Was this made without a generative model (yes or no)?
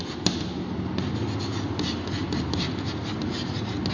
yes